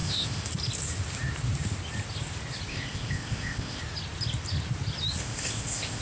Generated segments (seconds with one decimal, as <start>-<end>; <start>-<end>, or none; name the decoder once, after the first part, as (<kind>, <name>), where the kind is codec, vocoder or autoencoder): 0.0-0.5 (codec, ZipCodec); 2.7-3.8; 5.2-6.0

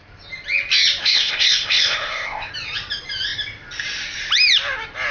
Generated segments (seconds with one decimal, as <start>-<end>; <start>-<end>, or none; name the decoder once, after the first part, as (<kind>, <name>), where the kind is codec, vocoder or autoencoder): 1.0-2.5 (codec, ZipCodec)

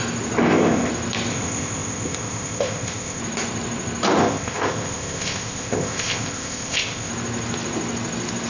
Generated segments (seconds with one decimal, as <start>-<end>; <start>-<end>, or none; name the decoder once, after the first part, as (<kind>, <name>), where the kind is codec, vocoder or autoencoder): 0.4-0.9 (codec, ZipCodec); 1.3-3.2; 4.2-7.1

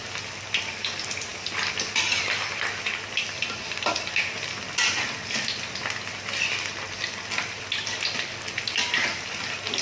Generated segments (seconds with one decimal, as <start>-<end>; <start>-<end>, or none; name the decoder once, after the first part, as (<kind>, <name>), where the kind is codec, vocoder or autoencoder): none

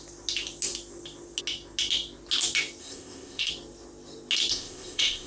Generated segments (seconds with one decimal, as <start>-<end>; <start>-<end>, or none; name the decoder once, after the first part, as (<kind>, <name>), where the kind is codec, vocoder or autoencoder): 2.8-3.5 (codec, ZipCodec); 4.5-5.3